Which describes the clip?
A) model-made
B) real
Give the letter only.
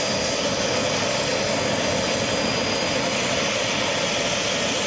B